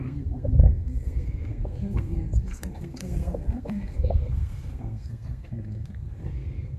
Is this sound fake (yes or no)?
yes